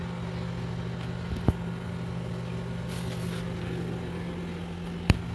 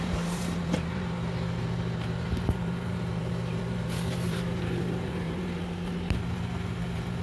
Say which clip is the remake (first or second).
second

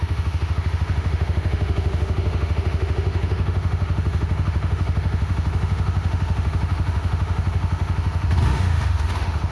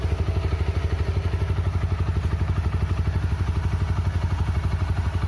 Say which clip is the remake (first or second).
first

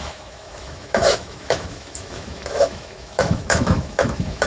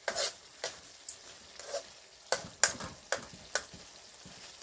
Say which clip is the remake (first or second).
first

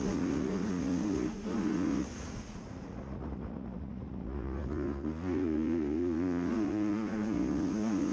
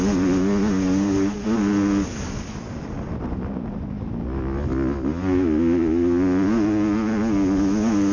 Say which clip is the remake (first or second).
first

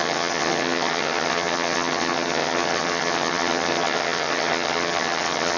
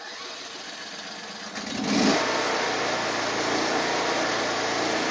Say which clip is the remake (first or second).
first